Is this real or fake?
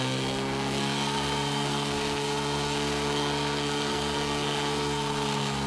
fake